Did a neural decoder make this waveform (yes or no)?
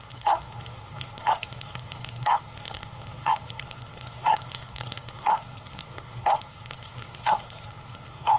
yes